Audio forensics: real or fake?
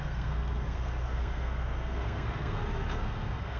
fake